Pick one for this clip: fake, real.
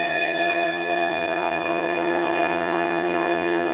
fake